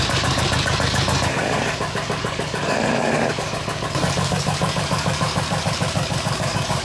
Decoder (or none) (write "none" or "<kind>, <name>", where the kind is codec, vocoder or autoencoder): codec, DAC